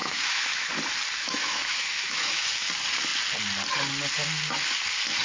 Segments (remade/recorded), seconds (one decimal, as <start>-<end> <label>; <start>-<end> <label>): 0.0-0.7 remade; 0.7-1.2 recorded; 1.2-2.7 remade; 2.7-5.2 recorded